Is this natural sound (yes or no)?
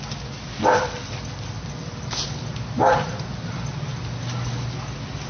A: yes